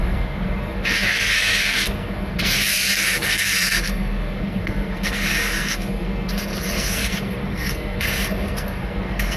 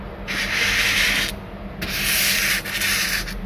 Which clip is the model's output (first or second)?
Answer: first